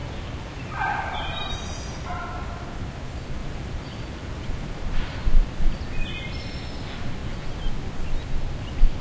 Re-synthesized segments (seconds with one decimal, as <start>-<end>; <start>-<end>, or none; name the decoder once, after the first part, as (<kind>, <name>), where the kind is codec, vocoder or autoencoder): 0.0-2.1 (vocoder, BigVGAN v2); 3.4-5.8

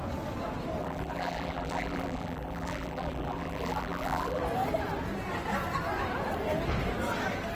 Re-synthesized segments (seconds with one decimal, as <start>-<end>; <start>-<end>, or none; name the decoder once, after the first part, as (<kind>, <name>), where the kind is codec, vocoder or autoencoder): 0.8-4.4 (vocoder, BigVGAN v2)

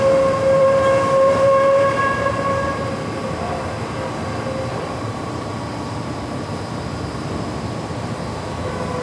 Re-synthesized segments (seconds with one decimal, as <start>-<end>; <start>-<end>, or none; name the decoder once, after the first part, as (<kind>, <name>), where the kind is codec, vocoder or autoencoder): 0.6-3.0 (vocoder, BigVGAN v2); 4.7-6.4

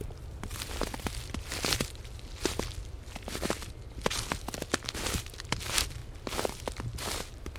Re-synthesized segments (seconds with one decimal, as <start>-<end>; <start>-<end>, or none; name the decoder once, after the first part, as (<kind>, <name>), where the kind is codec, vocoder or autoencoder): 0.0-6.0 (vocoder, BigVGAN v2)

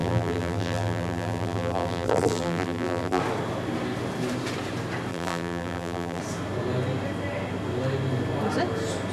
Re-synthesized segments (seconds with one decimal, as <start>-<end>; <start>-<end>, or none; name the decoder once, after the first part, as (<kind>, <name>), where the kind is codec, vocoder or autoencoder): 0.0-3.2 (vocoder, BigVGAN v2); 5.1-6.2

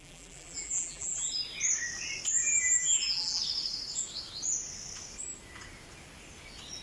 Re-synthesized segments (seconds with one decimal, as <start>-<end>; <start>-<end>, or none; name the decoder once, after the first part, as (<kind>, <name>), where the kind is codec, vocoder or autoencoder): 0.0-1.4 (vocoder, BigVGAN v2); 2.4-3.4

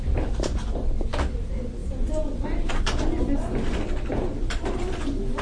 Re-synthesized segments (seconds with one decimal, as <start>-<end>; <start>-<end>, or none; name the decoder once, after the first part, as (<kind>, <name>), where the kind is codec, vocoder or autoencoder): 1.8-2.7 (vocoder, BigVGAN v2); 4.1-5.4

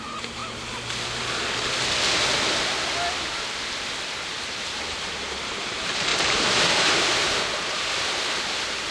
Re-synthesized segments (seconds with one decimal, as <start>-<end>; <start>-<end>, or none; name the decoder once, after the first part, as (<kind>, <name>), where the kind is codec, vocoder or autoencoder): 0.0-0.4 (vocoder, BigVGAN v2); 4.1-8.9